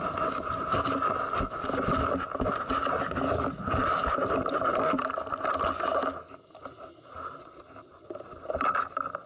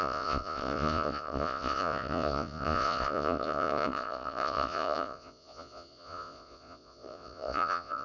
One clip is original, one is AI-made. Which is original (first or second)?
first